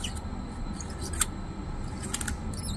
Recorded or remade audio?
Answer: recorded